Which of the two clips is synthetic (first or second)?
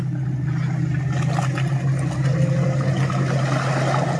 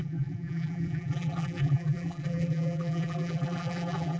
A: second